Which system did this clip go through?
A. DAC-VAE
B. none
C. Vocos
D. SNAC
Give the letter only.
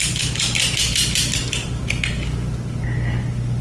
B